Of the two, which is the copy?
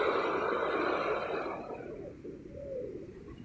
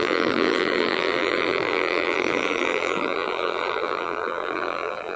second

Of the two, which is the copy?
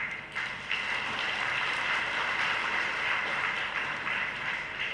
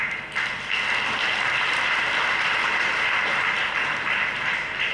first